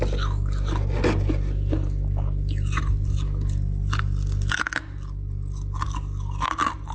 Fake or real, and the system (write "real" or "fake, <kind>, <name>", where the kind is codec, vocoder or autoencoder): real